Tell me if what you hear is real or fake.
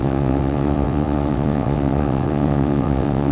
fake